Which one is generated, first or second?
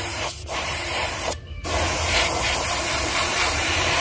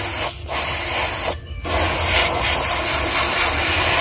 first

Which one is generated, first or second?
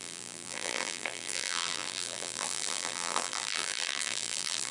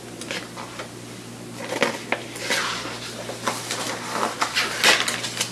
first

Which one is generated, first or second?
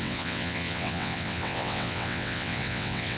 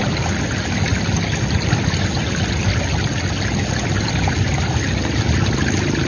first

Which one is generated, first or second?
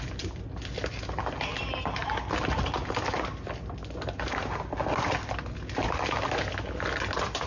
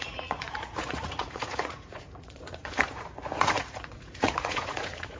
second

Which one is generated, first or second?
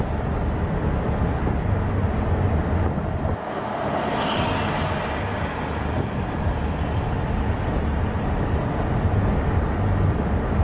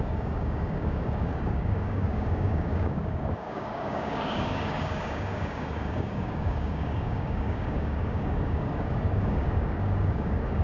second